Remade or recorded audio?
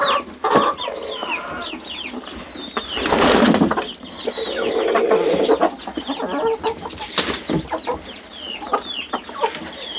recorded